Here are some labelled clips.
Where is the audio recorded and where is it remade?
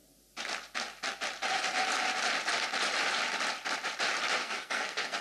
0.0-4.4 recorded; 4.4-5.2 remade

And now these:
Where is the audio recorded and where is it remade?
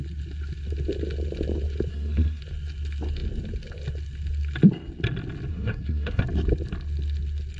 0.0-1.9 recorded; 1.9-2.4 remade; 2.4-5.5 recorded; 5.5-6.2 remade; 6.2-7.6 recorded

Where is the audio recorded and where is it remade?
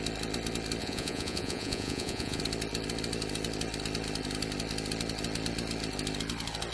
0.0-0.8 recorded; 0.8-2.4 remade; 2.4-6.7 recorded